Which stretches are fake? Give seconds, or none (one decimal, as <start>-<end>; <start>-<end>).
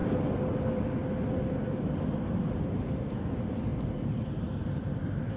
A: none